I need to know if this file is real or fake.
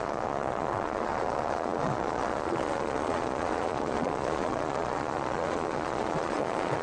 fake